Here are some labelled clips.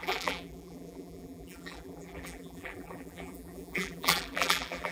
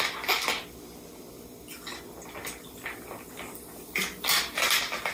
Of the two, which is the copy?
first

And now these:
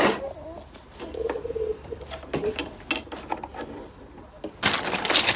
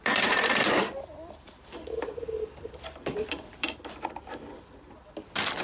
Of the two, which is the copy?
second